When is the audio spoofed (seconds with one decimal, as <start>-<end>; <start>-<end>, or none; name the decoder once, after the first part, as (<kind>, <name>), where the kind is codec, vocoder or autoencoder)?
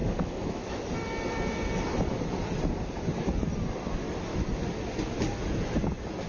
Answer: 0.0-0.8 (autoencoder, DAC-VAE)